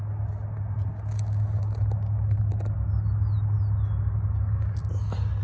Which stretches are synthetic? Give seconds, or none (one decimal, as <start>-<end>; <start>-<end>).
none